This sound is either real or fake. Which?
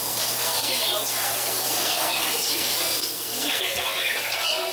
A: fake